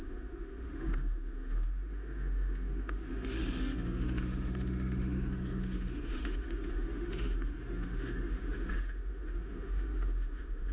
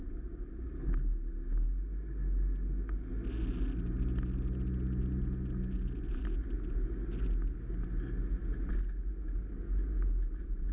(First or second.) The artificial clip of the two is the first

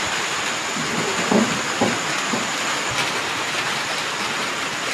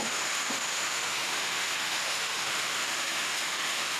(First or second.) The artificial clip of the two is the second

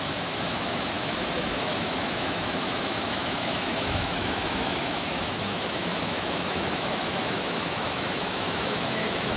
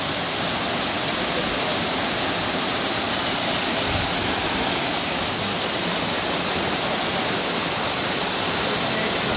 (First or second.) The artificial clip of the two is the first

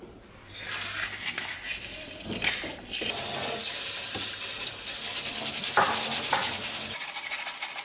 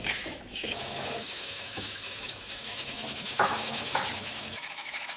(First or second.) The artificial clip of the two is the second